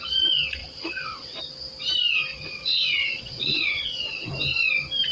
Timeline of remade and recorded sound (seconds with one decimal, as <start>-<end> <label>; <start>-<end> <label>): 0.0-0.6 recorded; 0.6-1.4 remade; 1.4-2.3 recorded; 2.3-4.3 remade; 4.3-5.1 recorded